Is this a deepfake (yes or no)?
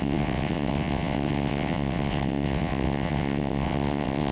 yes